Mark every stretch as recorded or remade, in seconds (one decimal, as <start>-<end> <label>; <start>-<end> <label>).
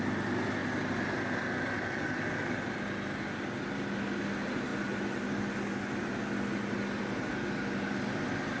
0.0-8.6 recorded